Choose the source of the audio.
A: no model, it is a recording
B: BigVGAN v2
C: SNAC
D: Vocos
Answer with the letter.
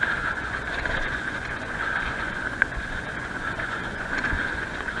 D